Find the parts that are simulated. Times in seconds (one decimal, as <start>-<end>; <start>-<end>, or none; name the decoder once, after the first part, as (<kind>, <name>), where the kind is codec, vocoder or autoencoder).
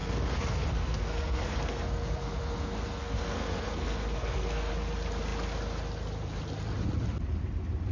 0.0-4.7 (codec, SNAC)